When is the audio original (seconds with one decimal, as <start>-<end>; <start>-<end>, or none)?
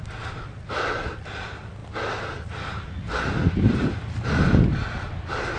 0.0-5.6